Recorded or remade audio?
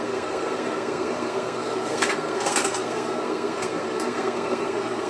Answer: remade